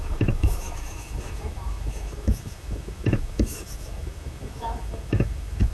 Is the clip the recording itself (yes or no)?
no